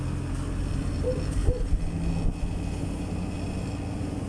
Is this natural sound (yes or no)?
yes